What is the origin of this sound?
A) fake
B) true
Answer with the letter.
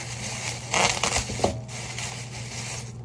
B